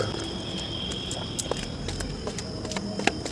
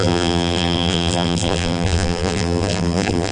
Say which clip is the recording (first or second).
first